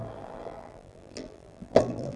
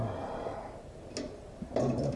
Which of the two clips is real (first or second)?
second